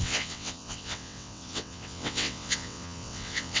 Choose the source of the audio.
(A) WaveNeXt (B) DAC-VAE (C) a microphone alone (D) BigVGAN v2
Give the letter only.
A